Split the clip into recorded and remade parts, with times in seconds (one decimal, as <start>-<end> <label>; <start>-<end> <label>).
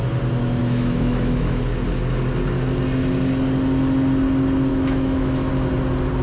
0.0-0.6 recorded; 0.6-1.6 remade; 1.6-4.7 recorded; 4.7-5.5 remade; 5.5-6.2 recorded